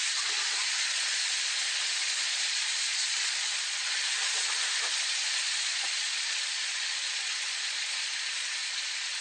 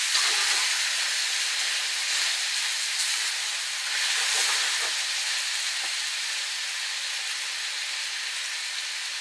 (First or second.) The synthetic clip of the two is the first